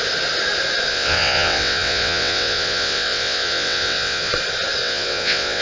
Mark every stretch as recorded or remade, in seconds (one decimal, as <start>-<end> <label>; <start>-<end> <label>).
0.0-0.9 recorded; 0.9-4.3 remade; 4.3-4.8 recorded; 4.8-5.6 remade